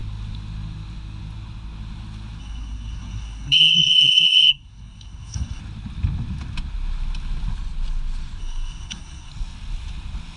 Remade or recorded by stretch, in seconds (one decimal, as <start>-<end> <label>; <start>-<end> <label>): 0.0-2.4 recorded; 2.4-5.6 remade; 5.6-8.4 recorded; 8.4-9.3 remade; 9.3-10.4 recorded

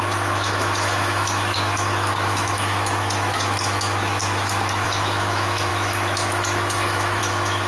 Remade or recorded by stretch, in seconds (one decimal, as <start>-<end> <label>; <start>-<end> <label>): 0.0-7.7 remade

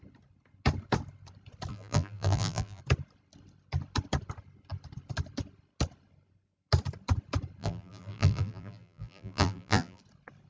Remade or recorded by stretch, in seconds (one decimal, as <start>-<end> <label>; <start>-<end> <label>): 0.0-1.7 recorded; 1.7-2.8 remade; 2.8-7.6 recorded; 7.6-10.0 remade; 10.0-10.5 recorded